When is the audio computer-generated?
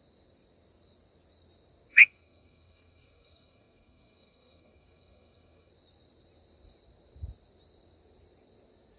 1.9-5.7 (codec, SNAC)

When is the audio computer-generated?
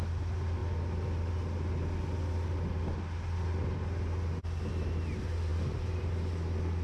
5.5-6.1 (vocoder, BigVGAN v2)